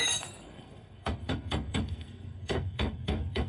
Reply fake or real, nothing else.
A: fake